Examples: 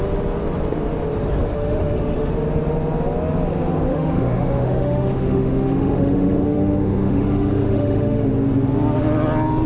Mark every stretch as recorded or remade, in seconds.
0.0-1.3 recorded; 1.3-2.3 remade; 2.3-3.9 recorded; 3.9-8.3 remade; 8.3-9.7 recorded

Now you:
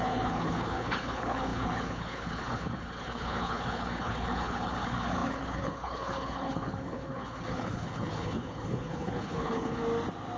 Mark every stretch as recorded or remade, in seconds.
0.0-9.8 remade; 9.8-10.4 recorded

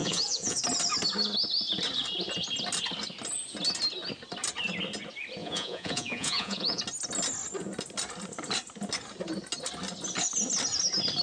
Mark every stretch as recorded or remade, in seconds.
0.0-0.6 remade; 0.6-5.4 recorded; 5.4-6.8 remade; 6.8-11.2 recorded

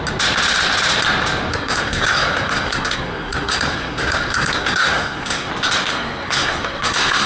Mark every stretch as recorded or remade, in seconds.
0.0-1.5 recorded; 1.5-5.5 remade; 5.5-5.9 recorded; 5.9-7.3 remade

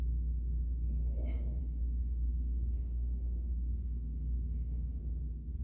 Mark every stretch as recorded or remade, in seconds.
0.0-1.6 recorded; 1.6-5.0 remade; 5.0-5.6 recorded

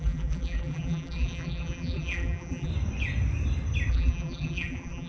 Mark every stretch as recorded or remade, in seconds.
0.0-2.7 remade; 2.7-3.9 recorded; 3.9-5.1 remade